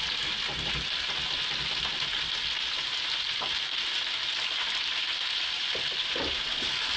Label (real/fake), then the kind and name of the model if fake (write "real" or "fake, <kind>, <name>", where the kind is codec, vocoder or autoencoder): real